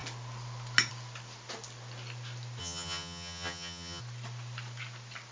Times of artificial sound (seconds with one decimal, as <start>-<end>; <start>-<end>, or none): 2.6-4.0